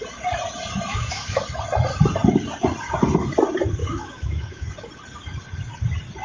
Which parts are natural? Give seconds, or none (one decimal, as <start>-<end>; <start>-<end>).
0.0-0.9; 1.4-3.8; 4.7-6.2